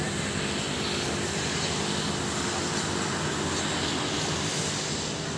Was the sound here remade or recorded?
recorded